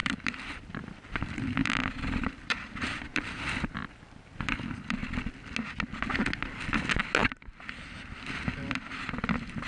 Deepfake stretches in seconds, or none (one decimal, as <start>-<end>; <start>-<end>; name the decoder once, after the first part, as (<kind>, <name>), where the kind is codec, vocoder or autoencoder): 0.0-5.0 (vocoder, BigVGAN v2); 8.2-9.7